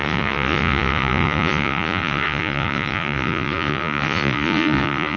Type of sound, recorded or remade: remade